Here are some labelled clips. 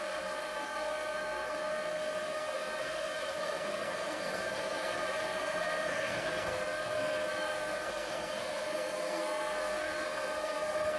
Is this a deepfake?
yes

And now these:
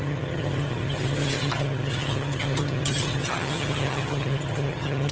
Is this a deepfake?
yes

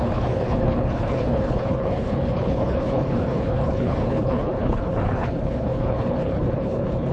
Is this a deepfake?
yes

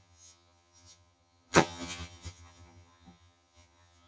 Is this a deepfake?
yes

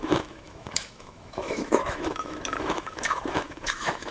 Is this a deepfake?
yes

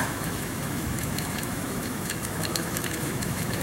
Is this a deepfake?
yes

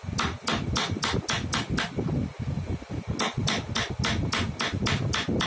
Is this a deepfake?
no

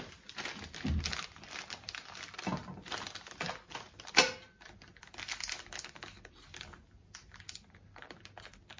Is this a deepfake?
no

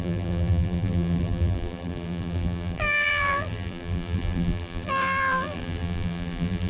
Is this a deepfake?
yes